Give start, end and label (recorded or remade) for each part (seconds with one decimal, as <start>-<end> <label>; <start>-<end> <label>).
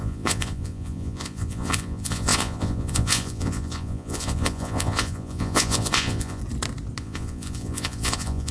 0.0-6.4 remade; 6.4-7.0 recorded; 7.0-8.5 remade